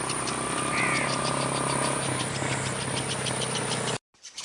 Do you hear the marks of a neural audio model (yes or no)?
no